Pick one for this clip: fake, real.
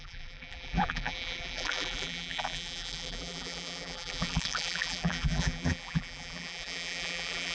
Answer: fake